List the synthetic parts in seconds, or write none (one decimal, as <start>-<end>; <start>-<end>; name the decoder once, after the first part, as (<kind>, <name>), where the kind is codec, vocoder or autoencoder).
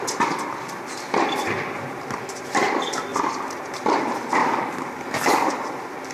4.4-5.5 (codec, DAC)